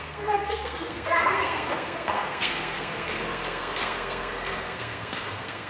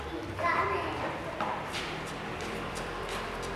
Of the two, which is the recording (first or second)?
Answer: second